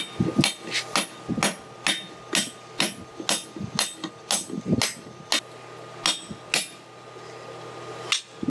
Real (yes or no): yes